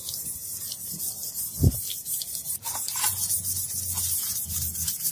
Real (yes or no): yes